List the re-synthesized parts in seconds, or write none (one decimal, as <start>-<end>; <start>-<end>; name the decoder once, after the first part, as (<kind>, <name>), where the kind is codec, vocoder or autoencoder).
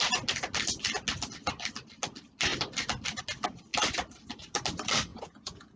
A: 5.1-5.8 (vocoder, Vocos)